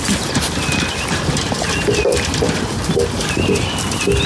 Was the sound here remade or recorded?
recorded